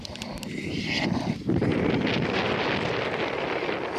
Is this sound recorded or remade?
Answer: recorded